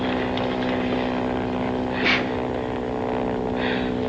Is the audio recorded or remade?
recorded